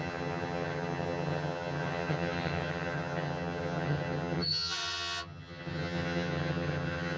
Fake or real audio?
fake